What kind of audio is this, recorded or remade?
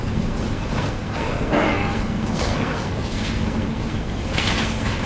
remade